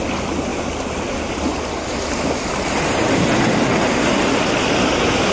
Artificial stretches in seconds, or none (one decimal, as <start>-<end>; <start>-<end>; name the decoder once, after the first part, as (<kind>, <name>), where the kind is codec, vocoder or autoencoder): none

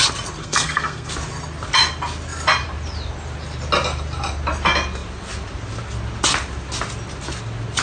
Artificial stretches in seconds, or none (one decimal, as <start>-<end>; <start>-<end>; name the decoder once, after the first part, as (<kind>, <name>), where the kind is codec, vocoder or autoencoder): 0.4-1.1 (codec, SNAC)

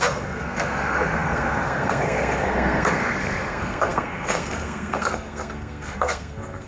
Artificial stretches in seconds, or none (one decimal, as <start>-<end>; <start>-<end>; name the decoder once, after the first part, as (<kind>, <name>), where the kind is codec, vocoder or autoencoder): 0.0-6.7 (codec, SNAC)

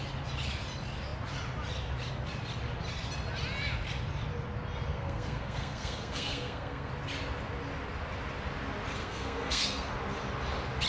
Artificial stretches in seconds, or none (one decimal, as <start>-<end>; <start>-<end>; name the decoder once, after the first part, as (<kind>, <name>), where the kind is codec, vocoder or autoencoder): 4.9-6.9 (codec, SNAC); 9.0-9.9

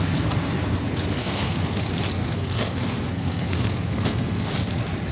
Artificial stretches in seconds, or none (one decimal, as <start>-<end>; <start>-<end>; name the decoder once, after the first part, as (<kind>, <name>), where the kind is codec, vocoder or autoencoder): 1.2-1.8 (codec, SNAC); 2.2-4.5